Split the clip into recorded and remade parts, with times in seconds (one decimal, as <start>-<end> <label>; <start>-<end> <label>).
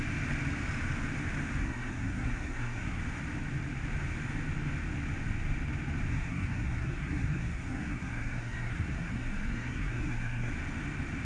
0.0-1.6 recorded; 1.6-3.0 remade; 3.0-6.1 recorded; 6.1-10.5 remade; 10.5-11.2 recorded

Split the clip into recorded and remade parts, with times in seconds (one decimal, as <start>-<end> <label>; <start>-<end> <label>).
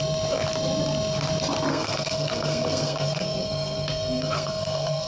0.0-1.7 recorded; 1.7-5.1 remade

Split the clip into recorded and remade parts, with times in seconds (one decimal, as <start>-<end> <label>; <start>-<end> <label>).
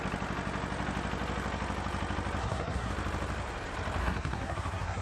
0.0-2.4 recorded; 2.4-2.9 remade; 2.9-4.0 recorded; 4.0-5.0 remade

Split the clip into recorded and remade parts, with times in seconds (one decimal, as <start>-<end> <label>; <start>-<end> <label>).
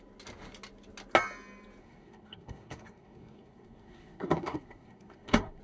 0.0-1.8 recorded; 1.8-5.6 remade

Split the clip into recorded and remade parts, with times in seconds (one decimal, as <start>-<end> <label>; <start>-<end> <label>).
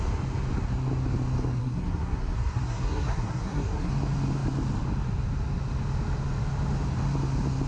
0.0-1.6 recorded; 1.6-3.9 remade; 3.9-7.7 recorded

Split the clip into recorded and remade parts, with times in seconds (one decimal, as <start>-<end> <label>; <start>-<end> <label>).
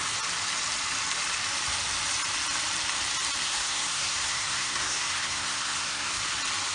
0.0-3.4 recorded; 3.4-6.1 remade; 6.1-6.7 recorded